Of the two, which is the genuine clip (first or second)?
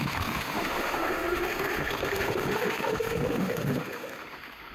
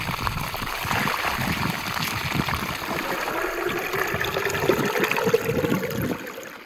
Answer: second